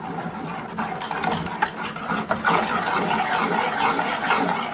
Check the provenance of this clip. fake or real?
real